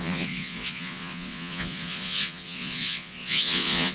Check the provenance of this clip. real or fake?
fake